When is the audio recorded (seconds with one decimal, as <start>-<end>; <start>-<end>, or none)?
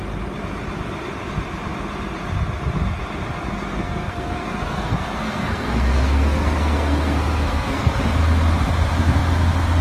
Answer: 0.0-3.7; 7.9-9.8